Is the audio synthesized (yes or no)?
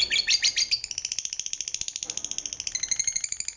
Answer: no